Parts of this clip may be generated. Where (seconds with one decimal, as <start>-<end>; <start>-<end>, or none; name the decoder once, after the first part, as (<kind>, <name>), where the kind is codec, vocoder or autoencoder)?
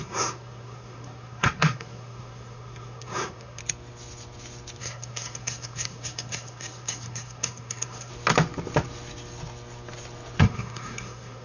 0.0-3.6 (codec, SNAC); 4.8-8.1; 10.4-11.4